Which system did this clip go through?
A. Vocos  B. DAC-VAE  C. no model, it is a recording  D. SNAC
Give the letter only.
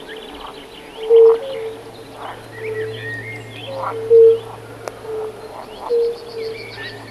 C